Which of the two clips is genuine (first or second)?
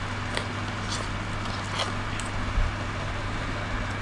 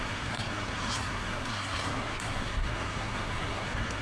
first